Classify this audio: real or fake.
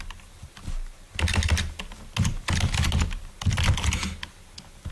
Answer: real